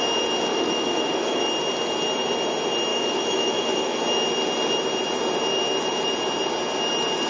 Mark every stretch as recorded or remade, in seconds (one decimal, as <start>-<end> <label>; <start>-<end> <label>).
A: 0.0-0.5 recorded; 0.5-1.4 remade; 1.4-2.9 recorded; 2.9-4.0 remade; 4.0-7.3 recorded